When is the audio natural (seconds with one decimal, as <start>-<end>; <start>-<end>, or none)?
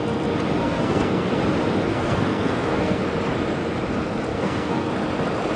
0.0-0.6; 1.4-1.9; 3.0-4.3; 4.9-5.6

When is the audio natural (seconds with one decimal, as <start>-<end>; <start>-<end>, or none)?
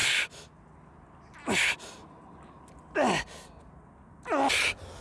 0.0-5.0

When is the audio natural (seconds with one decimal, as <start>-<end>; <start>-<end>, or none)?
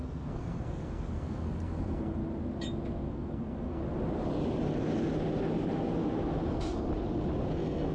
2.2-3.1; 3.8-6.5; 6.9-7.5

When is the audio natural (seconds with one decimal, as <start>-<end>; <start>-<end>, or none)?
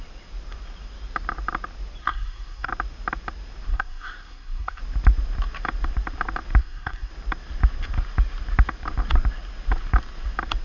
0.0-2.0; 2.7-3.7; 4.8-6.6; 7.1-10.6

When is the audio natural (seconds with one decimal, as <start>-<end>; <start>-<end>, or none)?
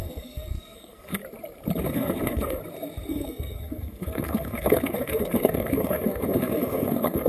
1.2-1.8; 2.6-3.1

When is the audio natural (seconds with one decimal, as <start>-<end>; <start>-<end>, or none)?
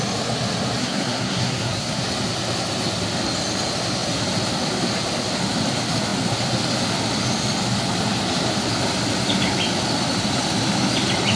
0.0-0.8; 2.0-11.4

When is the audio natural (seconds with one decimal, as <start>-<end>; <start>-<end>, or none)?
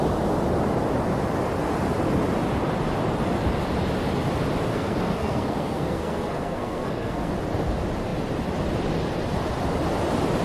0.0-4.7; 7.3-10.4